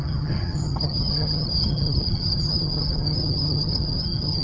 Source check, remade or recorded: remade